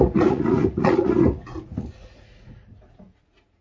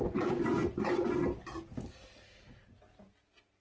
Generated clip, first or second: first